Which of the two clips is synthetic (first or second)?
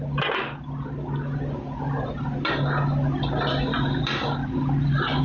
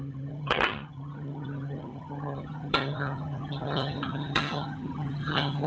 second